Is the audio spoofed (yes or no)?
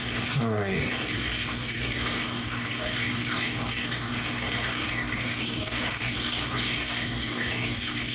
yes